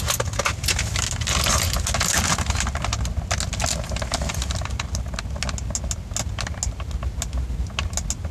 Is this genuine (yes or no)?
yes